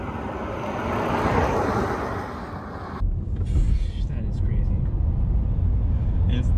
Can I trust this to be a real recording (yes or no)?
yes